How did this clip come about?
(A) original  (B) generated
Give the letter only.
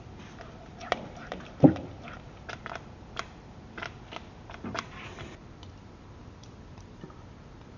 A